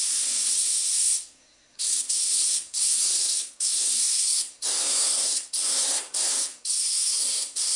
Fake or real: fake